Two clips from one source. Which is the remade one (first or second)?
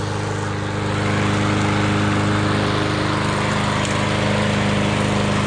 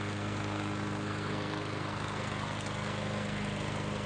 second